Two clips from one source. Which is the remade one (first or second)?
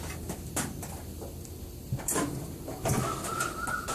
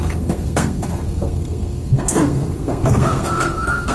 second